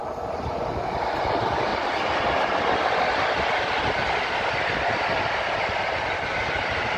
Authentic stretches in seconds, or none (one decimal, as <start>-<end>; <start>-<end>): 0.0-1.7; 5.9-7.0